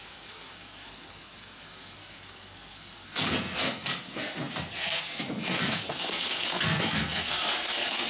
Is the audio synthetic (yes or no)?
yes